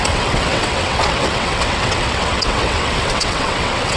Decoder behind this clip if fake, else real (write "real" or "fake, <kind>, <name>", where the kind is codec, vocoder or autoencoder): fake, vocoder, WaveNeXt